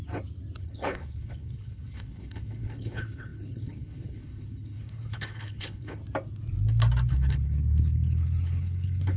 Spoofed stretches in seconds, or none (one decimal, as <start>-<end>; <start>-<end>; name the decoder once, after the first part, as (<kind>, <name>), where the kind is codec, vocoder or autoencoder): 0.6-6.0 (codec, HILCodec); 7.1-9.2